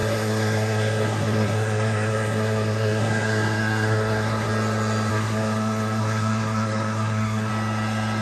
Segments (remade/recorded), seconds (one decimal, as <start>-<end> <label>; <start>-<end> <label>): 0.0-4.5 remade; 4.5-5.1 recorded; 5.1-7.5 remade; 7.5-8.2 recorded